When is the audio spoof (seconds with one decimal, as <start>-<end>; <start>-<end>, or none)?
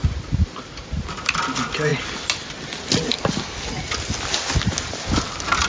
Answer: none